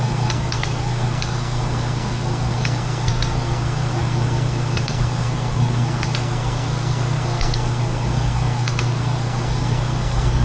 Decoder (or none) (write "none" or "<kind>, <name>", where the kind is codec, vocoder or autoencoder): codec, SNAC